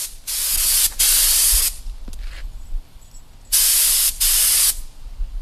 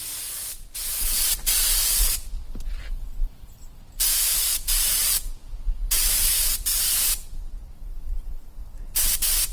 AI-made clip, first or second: second